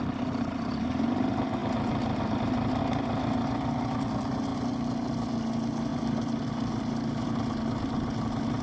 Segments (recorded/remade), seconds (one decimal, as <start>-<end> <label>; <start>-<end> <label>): 0.0-1.6 recorded; 1.6-2.8 remade; 2.8-5.9 recorded; 5.9-6.7 remade; 6.7-8.6 recorded